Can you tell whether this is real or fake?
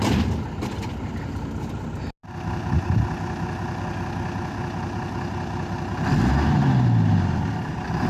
real